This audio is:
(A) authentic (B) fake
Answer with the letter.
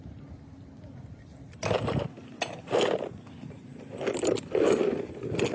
A